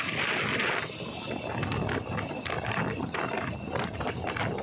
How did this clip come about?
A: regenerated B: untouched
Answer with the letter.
B